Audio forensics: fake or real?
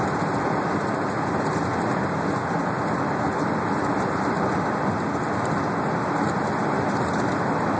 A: real